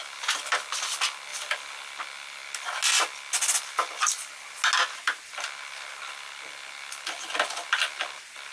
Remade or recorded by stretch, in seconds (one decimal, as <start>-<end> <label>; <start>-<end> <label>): 0.0-8.5 recorded